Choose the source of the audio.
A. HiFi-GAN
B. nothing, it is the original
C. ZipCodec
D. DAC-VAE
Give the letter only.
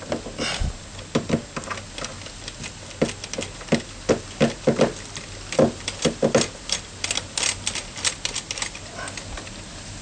B